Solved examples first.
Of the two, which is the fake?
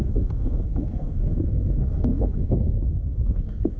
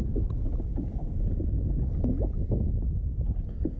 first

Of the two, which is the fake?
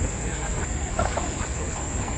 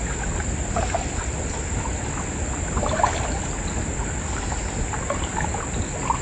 first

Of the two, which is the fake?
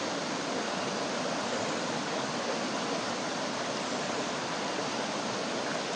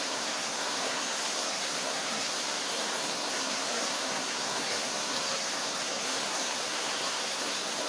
second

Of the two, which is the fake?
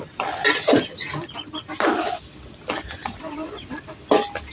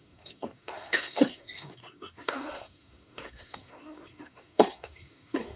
second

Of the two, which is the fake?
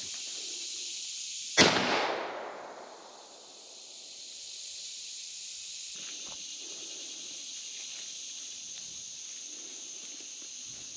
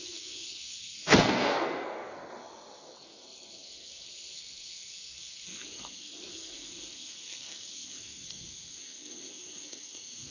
second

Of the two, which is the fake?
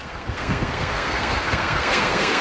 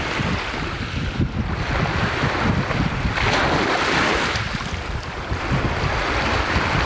first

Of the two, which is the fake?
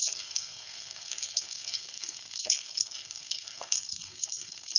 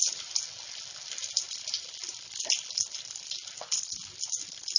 first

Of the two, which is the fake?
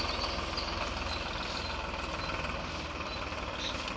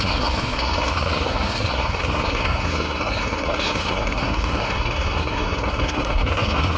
second